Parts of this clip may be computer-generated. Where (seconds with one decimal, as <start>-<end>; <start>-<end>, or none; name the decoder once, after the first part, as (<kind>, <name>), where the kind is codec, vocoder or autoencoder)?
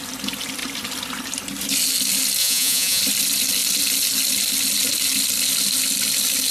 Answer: 2.4-3.0 (vocoder, Vocos)